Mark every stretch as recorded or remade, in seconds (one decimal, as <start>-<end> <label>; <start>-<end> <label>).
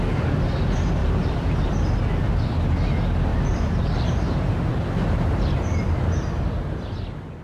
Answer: 0.0-1.0 recorded; 1.0-1.7 remade; 1.7-3.3 recorded; 3.3-5.6 remade; 5.6-7.4 recorded